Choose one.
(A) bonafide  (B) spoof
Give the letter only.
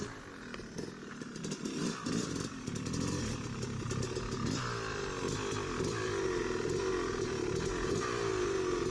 A